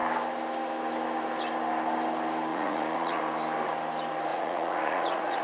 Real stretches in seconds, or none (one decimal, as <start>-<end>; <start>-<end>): 0.0-2.5; 3.2-4.3

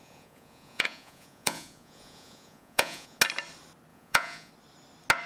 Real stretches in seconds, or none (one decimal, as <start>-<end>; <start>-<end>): 3.2-3.9; 4.5-5.3

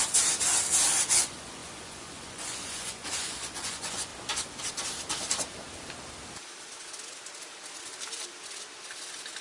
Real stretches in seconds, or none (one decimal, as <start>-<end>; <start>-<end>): 0.0-1.1; 4.1-9.4

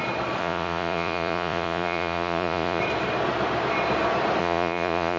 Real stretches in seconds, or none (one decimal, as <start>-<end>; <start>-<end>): 0.0-0.4; 2.8-4.4

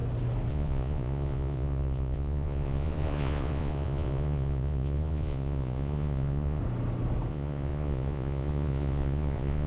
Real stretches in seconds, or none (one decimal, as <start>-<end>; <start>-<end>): 0.0-0.5; 6.6-7.3

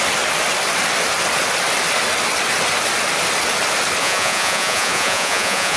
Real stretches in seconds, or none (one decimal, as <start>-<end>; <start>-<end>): 0.0-4.0